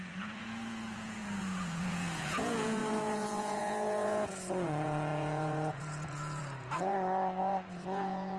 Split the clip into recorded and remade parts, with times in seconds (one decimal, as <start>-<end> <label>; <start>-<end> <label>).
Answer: 0.0-8.4 remade